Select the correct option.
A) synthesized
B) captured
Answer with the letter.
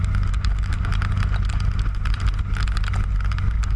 B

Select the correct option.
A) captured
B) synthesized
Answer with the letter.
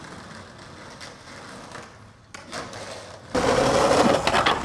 A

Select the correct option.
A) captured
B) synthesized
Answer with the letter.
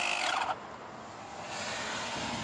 A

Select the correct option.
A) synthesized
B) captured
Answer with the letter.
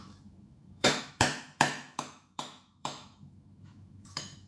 A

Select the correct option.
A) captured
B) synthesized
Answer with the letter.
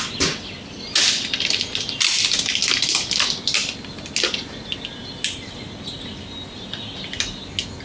A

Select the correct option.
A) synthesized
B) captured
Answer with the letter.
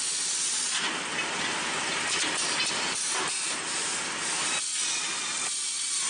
B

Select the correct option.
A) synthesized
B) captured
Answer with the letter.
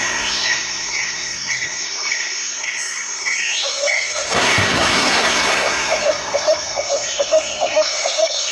A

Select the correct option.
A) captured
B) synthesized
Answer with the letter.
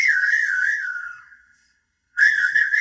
B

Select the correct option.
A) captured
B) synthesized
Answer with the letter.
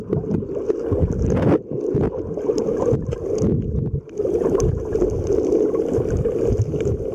A